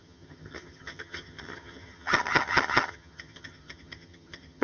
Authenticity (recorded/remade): remade